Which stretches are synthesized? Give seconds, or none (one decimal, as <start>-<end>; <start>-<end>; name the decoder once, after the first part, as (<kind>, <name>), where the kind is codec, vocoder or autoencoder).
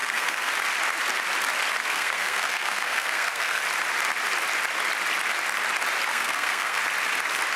0.0-0.5 (codec, SNAC); 1.8-3.6; 6.1-6.8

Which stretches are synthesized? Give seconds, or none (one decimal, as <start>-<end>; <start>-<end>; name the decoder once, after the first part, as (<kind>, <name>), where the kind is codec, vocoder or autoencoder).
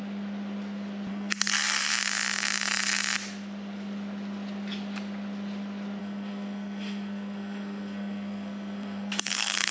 1.1-1.9 (codec, SNAC); 6.0-9.7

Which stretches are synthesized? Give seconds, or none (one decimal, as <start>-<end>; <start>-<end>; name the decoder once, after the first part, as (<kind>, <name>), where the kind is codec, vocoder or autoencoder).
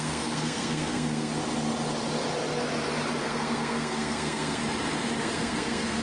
0.0-1.3 (codec, SNAC); 3.2-4.6; 5.2-6.0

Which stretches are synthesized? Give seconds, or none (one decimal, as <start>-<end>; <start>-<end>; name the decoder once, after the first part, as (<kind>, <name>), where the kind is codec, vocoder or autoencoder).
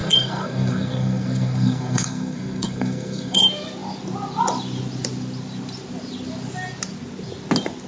0.0-3.4 (codec, SNAC)